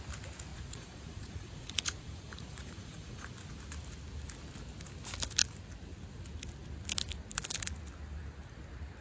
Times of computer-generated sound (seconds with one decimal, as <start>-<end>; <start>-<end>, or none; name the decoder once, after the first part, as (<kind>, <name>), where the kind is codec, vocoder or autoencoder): 0.5-3.3 (vocoder, Vocos)